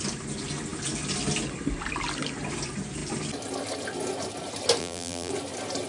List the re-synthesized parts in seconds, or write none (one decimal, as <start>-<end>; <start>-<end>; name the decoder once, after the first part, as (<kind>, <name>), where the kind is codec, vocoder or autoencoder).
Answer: 4.8-5.3 (vocoder, BigVGAN v2)